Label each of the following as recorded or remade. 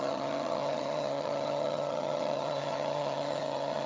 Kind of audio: remade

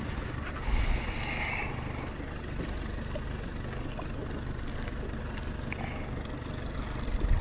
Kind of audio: recorded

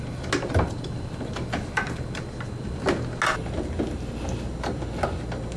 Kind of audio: recorded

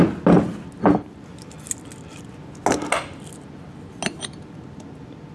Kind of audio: recorded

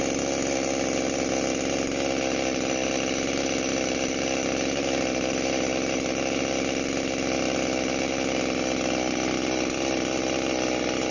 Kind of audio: recorded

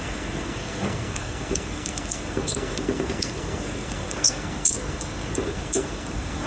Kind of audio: remade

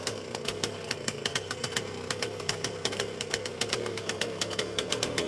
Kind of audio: remade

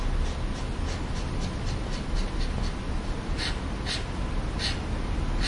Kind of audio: recorded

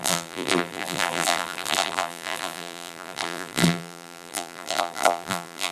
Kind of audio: remade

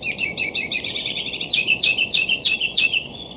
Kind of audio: remade